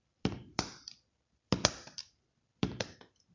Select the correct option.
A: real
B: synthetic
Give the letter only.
B